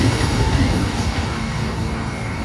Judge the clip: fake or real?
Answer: fake